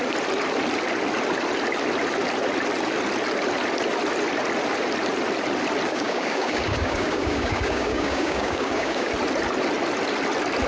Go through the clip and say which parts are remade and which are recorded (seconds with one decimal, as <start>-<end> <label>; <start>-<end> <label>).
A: 0.0-5.9 recorded; 5.9-9.1 remade; 9.1-10.7 recorded